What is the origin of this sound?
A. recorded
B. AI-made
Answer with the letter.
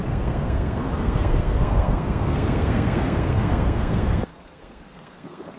B